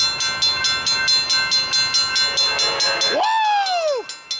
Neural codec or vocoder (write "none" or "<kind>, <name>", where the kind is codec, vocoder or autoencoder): none